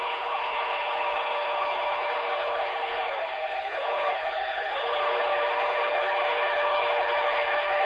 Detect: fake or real fake